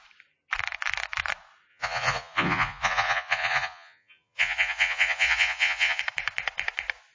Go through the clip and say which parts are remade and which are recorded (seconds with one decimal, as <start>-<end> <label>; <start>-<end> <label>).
0.0-1.7 recorded; 1.7-6.0 remade; 6.0-7.1 recorded